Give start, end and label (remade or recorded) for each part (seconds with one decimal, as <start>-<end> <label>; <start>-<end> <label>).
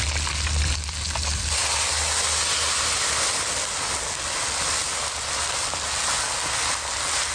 0.0-7.3 recorded